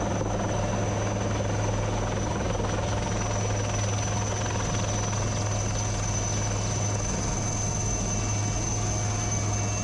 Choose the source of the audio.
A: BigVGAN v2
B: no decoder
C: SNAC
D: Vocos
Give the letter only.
B